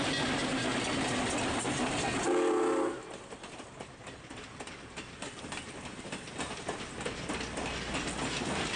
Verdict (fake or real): real